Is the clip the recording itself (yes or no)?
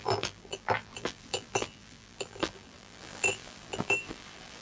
no